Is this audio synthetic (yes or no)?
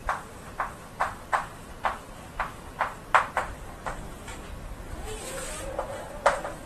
yes